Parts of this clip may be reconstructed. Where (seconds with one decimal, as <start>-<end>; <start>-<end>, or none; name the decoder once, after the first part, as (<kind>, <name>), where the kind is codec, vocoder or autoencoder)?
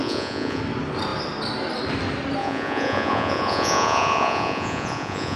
0.0-0.6 (vocoder, Vocos); 2.4-5.4